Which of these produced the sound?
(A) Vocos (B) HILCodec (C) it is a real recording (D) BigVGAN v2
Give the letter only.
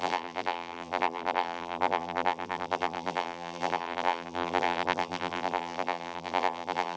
D